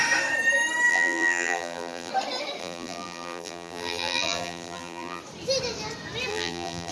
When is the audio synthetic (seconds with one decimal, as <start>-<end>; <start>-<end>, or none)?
0.9-2.1; 2.6-5.2; 6.3-6.9